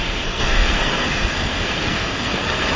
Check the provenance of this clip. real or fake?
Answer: fake